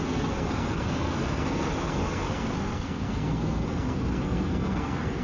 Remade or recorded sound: remade